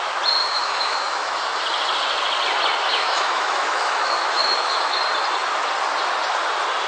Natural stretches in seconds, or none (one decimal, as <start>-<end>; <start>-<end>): 0.0-0.4; 1.6-2.9; 5.0-6.9